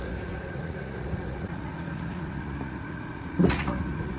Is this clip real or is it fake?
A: fake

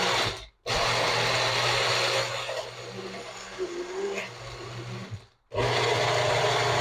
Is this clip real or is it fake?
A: real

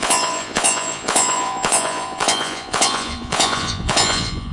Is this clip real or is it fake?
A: fake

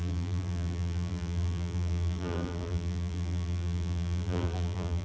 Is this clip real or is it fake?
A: fake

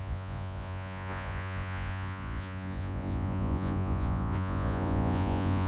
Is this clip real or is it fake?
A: fake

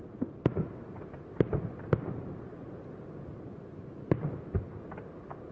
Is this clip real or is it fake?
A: real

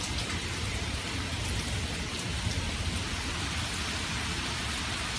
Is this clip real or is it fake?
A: real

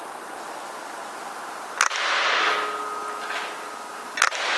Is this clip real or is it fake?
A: real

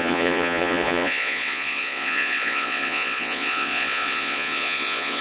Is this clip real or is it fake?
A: fake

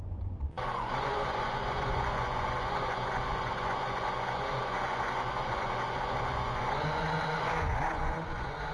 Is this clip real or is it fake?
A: fake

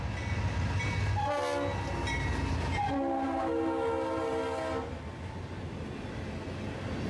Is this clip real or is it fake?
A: real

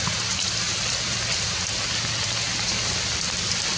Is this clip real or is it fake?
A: real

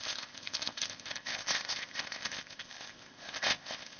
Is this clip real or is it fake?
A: fake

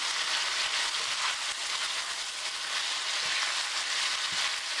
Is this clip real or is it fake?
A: real